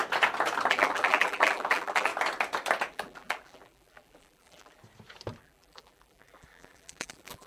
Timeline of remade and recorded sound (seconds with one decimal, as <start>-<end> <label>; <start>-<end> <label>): 0.0-0.7 recorded; 0.7-2.1 remade; 2.1-2.9 recorded; 2.9-4.8 remade; 4.8-5.4 recorded; 5.4-7.5 remade